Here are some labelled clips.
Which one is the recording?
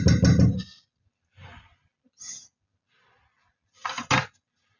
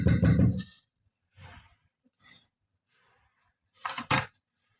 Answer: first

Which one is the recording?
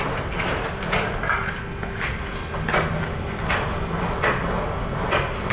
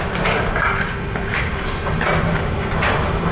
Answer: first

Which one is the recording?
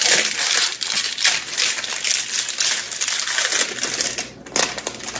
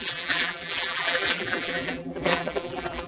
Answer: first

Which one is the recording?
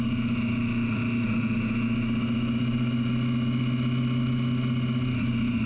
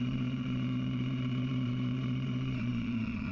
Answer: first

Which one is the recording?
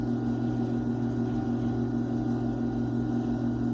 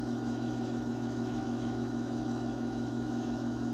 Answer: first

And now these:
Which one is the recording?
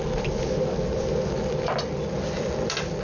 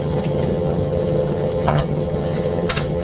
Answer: first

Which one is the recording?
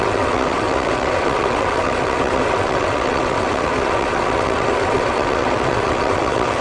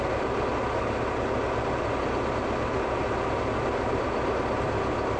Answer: second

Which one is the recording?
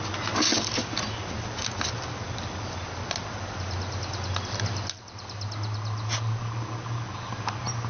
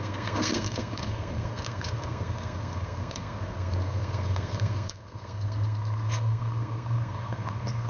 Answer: first